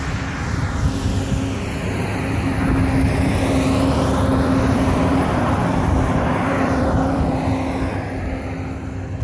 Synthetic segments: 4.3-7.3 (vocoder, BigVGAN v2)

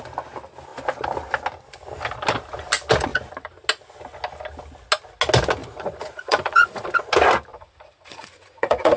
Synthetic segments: 5.6-6.9 (vocoder, Vocos); 7.5-9.0

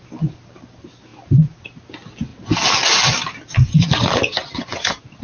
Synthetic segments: none

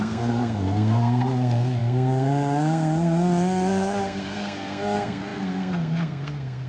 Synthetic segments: 0.0-6.7 (codec, SNAC)

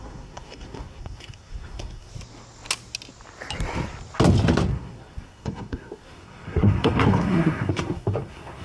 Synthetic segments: 0.0-2.1 (codec, SNAC); 4.7-8.6

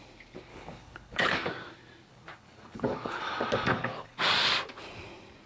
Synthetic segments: 0.5-1.3 (codec, HILCodec); 2.1-3.2; 3.7-4.2